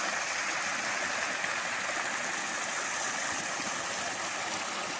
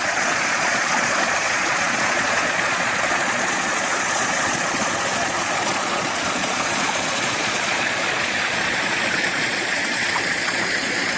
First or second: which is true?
first